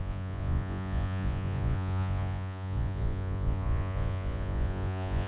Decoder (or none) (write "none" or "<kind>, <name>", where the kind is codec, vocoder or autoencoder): vocoder, Vocos